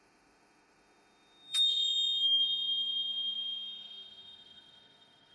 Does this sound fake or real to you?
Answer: fake